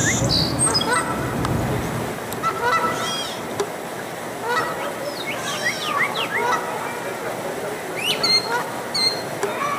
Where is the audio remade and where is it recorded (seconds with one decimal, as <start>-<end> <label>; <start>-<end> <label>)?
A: 0.0-9.8 recorded